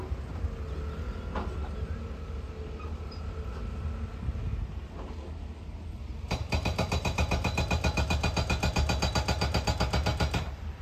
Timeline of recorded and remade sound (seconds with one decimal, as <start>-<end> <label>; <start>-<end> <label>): 0.0-10.1 recorded; 10.1-10.8 remade